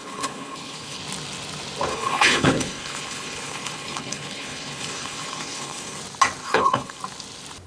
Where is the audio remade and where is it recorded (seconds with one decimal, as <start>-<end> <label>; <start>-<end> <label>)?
0.0-1.0 remade; 1.0-1.9 recorded; 1.9-6.0 remade; 6.0-6.4 recorded; 6.4-7.0 remade; 7.0-7.7 recorded